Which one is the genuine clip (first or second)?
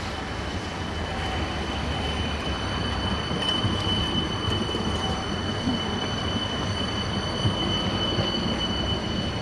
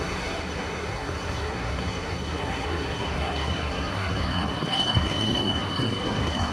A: first